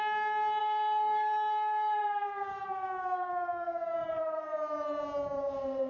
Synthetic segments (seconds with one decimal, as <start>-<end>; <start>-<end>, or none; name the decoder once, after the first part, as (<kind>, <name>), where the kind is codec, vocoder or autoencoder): 0.6-4.1 (codec, DAC)